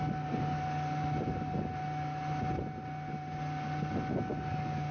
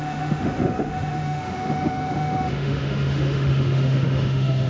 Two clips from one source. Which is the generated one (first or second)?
second